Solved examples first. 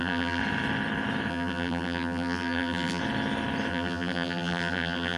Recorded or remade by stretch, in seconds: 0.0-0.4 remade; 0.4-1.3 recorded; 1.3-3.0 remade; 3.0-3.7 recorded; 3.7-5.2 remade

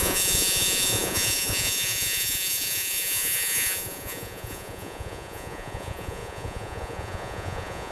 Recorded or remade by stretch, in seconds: 0.0-7.9 remade